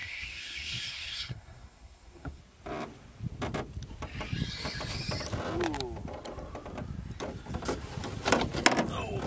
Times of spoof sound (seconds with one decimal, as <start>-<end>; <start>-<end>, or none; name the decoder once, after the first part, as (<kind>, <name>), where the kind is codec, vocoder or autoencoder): 0.0-2.4 (codec, SNAC)